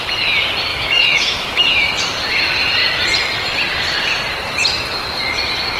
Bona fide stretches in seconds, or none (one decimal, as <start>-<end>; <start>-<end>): 0.0-0.7; 2.0-5.8